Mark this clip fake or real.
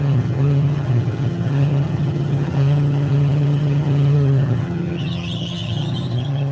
fake